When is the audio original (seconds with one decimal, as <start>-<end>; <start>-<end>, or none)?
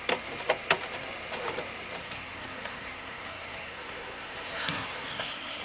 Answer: 0.0-2.0